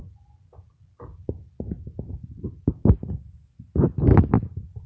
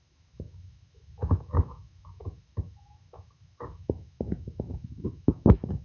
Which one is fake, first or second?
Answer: second